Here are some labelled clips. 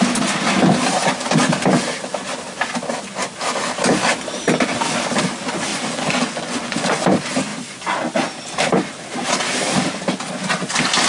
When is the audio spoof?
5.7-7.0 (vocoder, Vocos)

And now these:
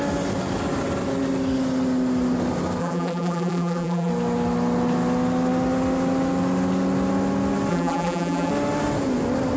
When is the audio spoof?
2.8-4.1 (vocoder, BigVGAN v2); 7.7-8.5

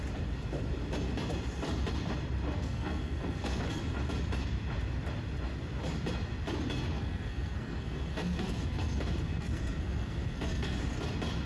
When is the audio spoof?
2.6-3.8 (codec, SNAC); 6.9-10.8

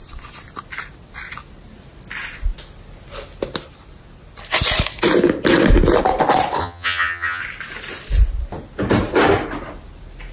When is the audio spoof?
6.6-7.4 (vocoder, HiFi-GAN)